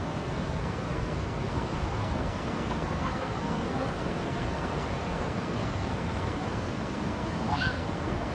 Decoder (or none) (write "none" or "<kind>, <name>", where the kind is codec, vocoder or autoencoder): codec, SNAC